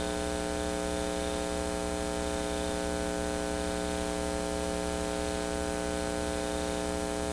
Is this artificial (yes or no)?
no